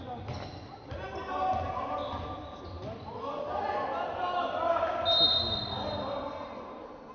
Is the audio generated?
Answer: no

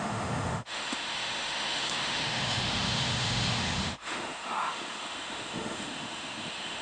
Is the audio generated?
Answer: yes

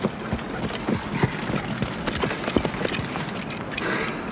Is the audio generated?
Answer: no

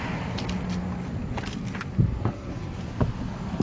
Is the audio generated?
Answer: no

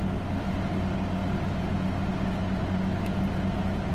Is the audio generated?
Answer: no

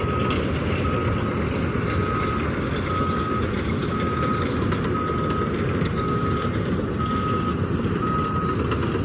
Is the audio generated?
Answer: no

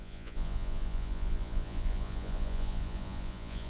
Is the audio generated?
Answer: yes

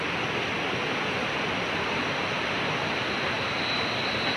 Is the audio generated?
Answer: yes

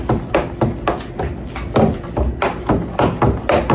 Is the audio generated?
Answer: no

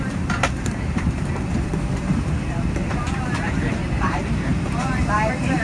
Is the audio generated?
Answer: yes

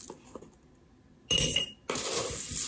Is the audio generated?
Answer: no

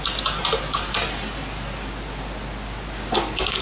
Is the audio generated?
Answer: no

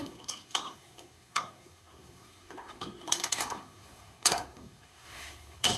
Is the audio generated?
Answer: yes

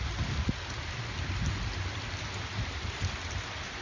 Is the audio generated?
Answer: no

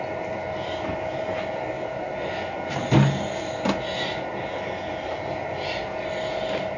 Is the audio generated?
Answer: no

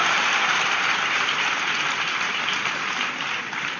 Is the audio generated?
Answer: no